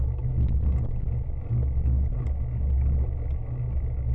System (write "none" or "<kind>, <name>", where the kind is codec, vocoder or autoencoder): none